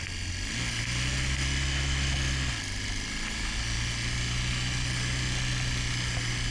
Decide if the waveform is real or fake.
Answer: real